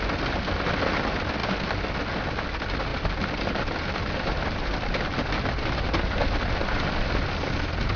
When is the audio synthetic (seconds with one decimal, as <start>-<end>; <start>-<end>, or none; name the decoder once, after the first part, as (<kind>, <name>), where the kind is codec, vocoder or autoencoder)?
2.9-7.3 (vocoder, BigVGAN v2)